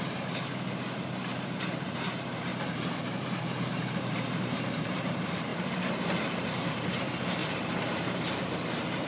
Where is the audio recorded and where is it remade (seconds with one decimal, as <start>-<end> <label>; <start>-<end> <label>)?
0.0-2.5 recorded; 2.5-5.1 remade; 5.1-5.5 recorded; 5.5-7.0 remade; 7.0-7.4 recorded; 7.4-8.4 remade; 8.4-9.1 recorded